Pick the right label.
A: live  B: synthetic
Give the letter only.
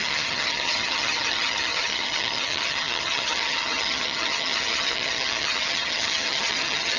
B